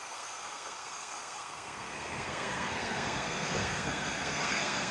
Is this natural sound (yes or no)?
no